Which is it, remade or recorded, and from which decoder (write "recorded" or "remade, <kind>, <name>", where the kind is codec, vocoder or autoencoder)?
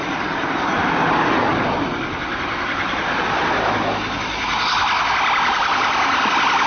recorded